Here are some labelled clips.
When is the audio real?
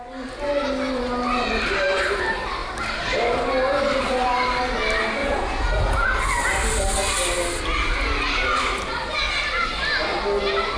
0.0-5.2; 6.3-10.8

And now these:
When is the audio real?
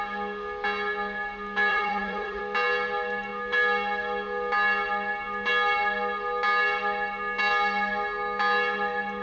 0.0-1.7; 2.4-9.2